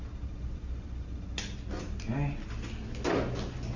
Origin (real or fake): real